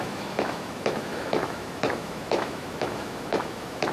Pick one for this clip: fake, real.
fake